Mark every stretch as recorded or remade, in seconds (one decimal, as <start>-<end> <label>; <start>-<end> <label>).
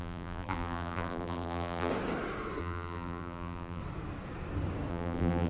0.0-1.9 remade; 1.9-2.6 recorded; 2.6-3.8 remade; 3.8-4.9 recorded; 4.9-5.5 remade